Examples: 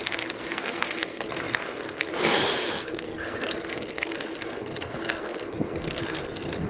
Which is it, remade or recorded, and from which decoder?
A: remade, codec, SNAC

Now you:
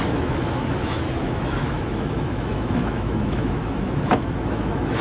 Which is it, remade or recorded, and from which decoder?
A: remade, autoencoder, DAC-VAE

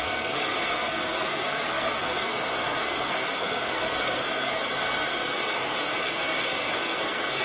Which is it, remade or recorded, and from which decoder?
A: remade, codec, SNAC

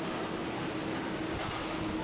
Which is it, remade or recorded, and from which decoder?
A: recorded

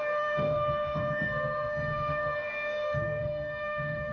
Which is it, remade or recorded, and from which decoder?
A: remade, codec, SNAC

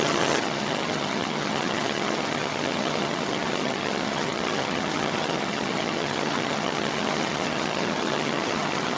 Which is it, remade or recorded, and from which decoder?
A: remade, vocoder, HiFi-GAN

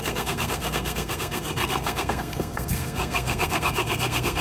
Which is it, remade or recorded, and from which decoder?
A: remade, codec, SNAC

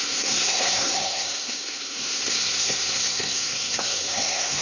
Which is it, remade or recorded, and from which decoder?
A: remade, codec, SNAC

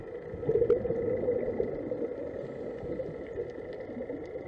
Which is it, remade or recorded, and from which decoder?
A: recorded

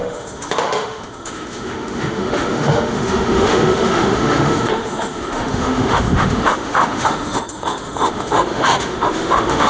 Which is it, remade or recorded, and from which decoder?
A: remade, autoencoder, DAC-VAE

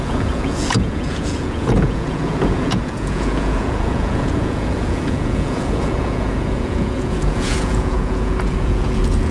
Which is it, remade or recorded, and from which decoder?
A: remade, vocoder, Vocos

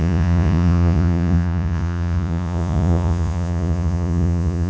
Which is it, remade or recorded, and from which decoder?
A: remade, vocoder, Vocos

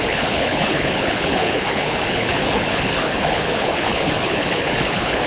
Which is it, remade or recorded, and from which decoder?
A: remade, codec, HILCodec